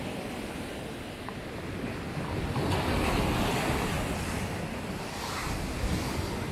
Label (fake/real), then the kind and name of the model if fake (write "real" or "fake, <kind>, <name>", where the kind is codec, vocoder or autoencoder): real